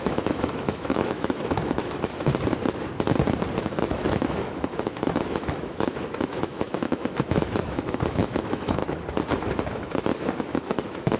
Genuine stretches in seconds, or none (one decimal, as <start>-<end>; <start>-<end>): 2.3-3.6; 8.8-9.8